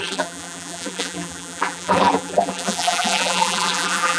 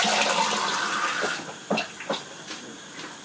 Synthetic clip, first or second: first